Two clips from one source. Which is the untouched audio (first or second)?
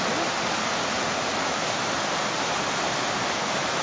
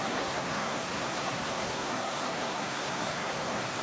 first